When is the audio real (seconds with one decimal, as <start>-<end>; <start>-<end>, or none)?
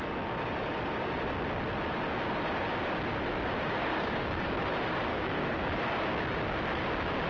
0.0-3.8; 4.5-5.1; 5.8-7.3